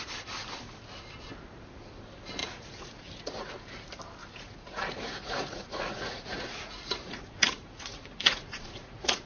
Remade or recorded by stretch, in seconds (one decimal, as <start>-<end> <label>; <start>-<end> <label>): 0.0-2.4 recorded; 2.4-3.5 remade; 3.5-4.2 recorded; 4.2-9.3 remade

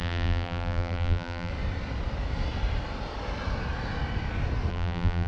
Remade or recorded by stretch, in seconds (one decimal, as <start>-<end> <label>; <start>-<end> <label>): 0.0-1.5 remade; 1.5-4.7 recorded; 4.7-5.3 remade

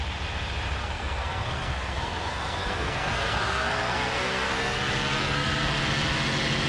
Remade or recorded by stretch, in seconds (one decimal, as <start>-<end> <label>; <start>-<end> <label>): 0.0-0.8 recorded; 0.8-4.8 remade; 4.8-5.2 recorded; 5.2-5.8 remade; 5.8-6.7 recorded

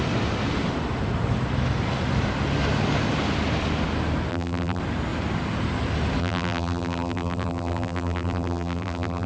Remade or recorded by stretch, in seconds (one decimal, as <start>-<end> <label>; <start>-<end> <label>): 0.0-4.3 recorded; 4.3-4.8 remade; 4.8-6.2 recorded; 6.2-9.3 remade

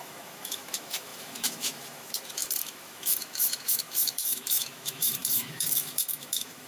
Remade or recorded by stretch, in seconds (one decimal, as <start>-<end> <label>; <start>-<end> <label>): 0.0-6.7 remade

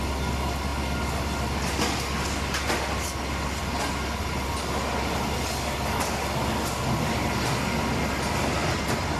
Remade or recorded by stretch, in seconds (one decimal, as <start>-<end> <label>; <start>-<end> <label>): 0.0-9.2 recorded

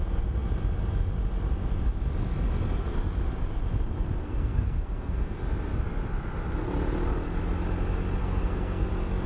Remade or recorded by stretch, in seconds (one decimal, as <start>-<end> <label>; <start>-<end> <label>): 0.0-4.2 recorded; 4.2-5.4 remade; 5.4-8.2 recorded; 8.2-8.9 remade; 8.9-9.3 recorded